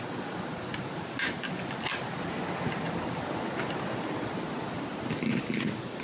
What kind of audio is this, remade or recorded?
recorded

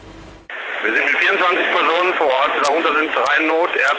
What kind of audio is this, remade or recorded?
remade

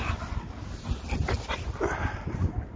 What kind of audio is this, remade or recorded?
recorded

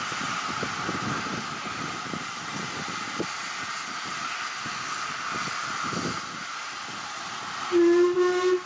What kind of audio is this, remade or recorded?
recorded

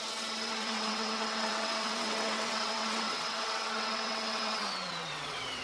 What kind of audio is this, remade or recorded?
remade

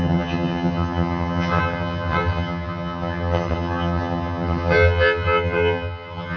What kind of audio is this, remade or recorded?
remade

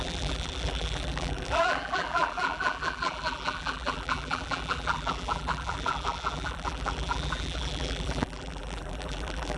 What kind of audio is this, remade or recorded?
remade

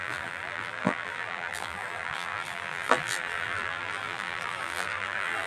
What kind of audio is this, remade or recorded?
remade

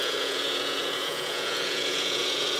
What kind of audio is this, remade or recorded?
remade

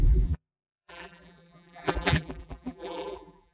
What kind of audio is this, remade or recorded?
remade